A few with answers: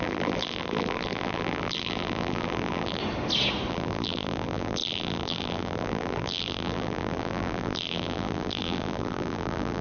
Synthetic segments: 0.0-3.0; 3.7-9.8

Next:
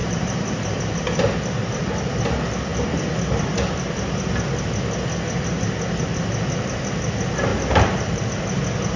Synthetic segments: 0.0-0.8; 7.5-8.3

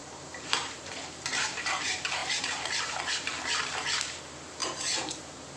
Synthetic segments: 0.0-5.6

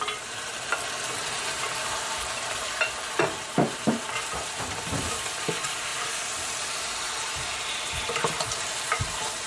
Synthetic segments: 0.0-0.7; 1.2-5.9; 6.4-9.5

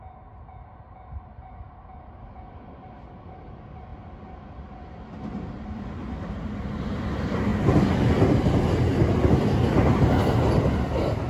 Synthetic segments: none

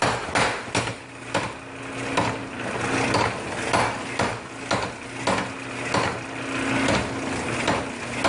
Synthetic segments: none

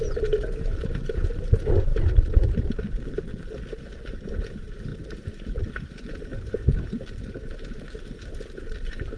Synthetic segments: 0.0-3.3; 4.0-9.2